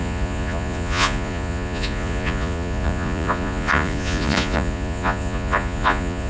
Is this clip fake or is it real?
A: fake